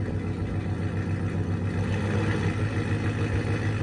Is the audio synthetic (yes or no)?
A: no